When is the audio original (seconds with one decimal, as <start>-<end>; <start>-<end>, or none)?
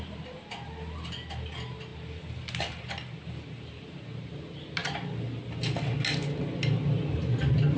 0.0-7.8